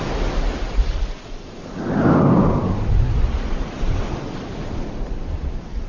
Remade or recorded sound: recorded